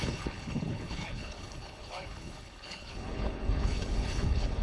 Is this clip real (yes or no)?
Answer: no